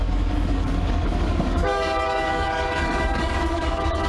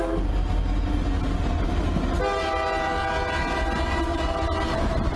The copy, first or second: first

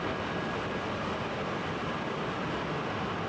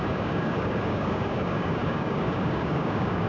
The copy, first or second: second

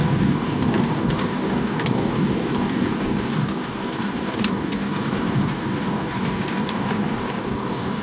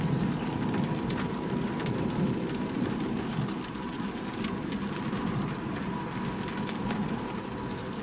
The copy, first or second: first